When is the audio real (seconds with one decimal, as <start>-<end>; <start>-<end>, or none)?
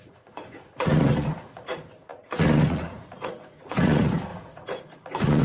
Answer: none